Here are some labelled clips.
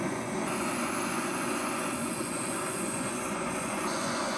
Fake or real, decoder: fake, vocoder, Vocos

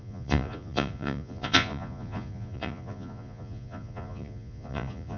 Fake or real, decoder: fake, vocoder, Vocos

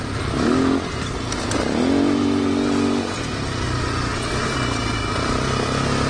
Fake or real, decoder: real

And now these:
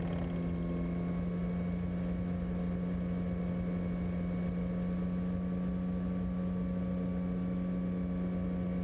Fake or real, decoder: real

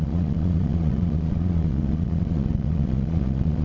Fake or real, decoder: fake, vocoder, Vocos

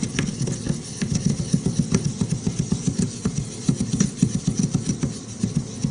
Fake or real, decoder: real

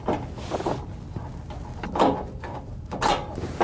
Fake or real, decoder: real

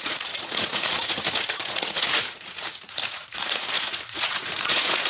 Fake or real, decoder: fake, vocoder, Vocos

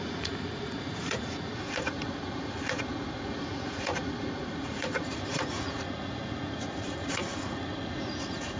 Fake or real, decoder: fake, vocoder, Vocos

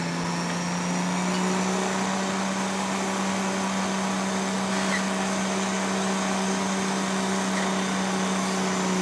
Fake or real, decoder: real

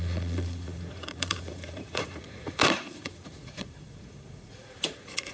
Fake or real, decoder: fake, vocoder, Vocos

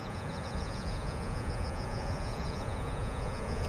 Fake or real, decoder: fake, vocoder, Vocos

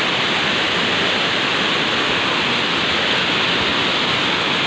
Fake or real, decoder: real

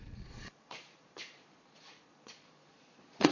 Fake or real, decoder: fake, vocoder, Vocos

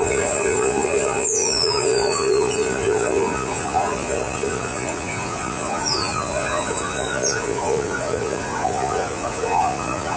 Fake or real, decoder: fake, vocoder, Vocos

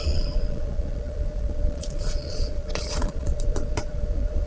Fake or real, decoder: fake, vocoder, Vocos